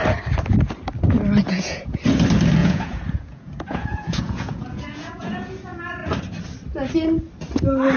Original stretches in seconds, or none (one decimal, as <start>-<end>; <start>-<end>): 0.0-1.4; 2.0-2.6; 5.5-8.0